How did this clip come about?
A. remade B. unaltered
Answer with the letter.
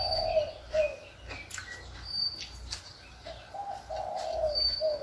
B